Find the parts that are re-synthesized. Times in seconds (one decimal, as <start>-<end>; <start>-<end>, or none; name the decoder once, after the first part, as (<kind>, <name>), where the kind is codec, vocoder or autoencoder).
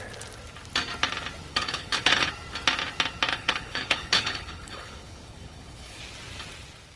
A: 1.5-2.3 (codec, HILCodec); 3.3-6.0